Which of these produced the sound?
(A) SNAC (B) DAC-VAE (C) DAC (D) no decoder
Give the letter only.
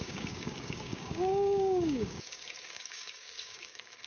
C